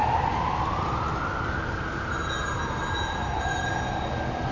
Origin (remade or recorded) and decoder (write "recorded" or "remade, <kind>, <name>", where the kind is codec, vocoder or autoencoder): recorded